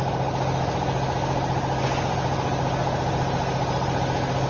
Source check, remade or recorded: recorded